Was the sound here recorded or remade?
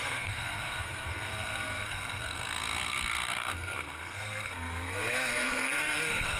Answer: remade